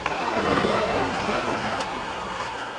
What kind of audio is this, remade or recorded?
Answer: remade